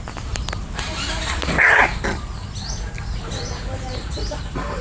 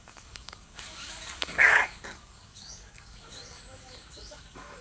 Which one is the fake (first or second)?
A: second